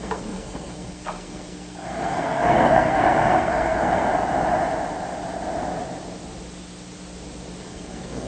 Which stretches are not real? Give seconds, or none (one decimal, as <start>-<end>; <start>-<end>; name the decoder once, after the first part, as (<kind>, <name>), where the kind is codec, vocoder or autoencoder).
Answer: 0.0-4.1 (codec, SNAC); 7.6-8.3